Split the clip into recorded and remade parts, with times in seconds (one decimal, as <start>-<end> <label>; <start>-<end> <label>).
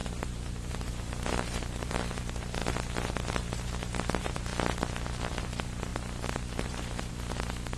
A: 0.0-2.6 remade; 2.6-3.3 recorded; 3.3-4.5 remade; 4.5-5.3 recorded; 5.3-7.8 remade